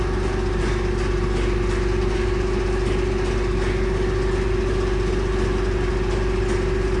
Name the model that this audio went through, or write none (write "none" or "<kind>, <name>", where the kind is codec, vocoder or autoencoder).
none